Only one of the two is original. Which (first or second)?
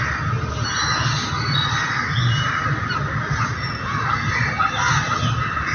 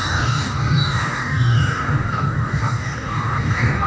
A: first